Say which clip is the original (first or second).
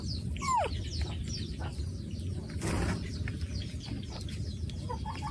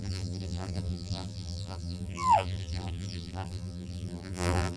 first